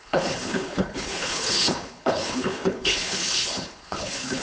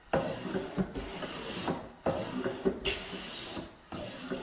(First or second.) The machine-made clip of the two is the first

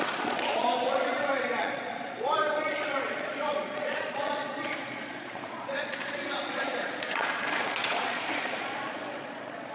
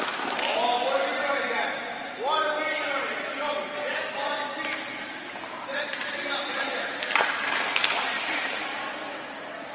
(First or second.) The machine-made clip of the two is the first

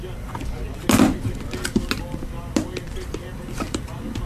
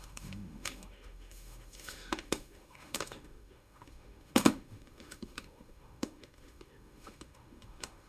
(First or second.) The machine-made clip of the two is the second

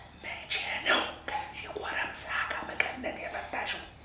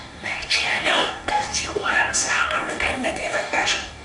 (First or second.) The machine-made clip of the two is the second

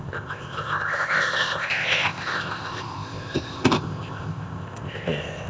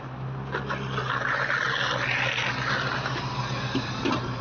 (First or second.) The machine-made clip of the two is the first